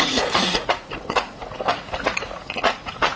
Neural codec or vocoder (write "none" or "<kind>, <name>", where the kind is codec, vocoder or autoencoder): vocoder, Vocos